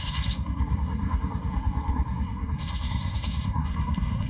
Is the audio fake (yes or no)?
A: yes